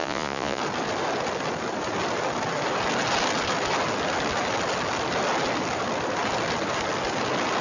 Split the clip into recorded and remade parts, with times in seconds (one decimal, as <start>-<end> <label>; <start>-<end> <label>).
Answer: 0.0-0.6 remade; 0.6-7.6 recorded